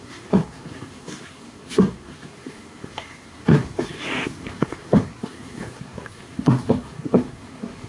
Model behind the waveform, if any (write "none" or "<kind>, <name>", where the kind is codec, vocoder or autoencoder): codec, SNAC